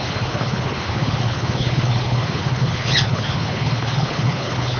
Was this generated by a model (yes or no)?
yes